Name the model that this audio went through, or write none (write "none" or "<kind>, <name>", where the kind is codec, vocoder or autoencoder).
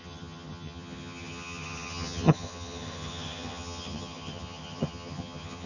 vocoder, HiFi-GAN